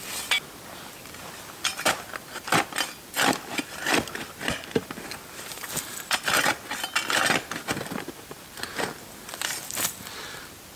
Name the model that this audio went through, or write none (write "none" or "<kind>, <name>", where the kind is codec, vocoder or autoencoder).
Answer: vocoder, BigVGAN v2